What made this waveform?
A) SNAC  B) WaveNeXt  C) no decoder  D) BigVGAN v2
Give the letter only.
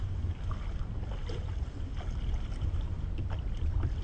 C